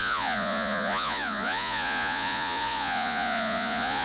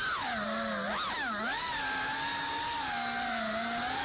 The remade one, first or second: first